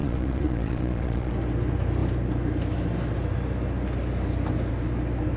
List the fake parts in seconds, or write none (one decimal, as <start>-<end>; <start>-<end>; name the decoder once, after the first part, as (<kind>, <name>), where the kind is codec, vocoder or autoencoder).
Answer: 0.0-1.3 (vocoder, Vocos)